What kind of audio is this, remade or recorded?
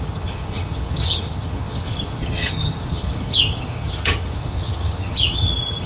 remade